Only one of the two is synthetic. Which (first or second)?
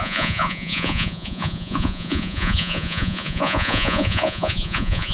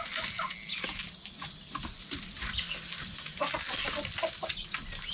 first